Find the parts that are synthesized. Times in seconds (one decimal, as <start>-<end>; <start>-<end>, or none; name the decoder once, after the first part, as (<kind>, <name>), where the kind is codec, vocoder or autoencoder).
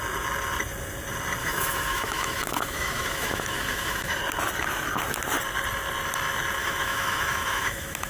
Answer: 1.4-4.2 (autoencoder, DAC-VAE); 6.6-8.1